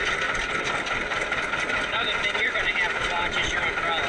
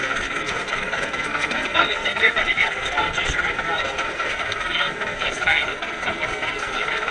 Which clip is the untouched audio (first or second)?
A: first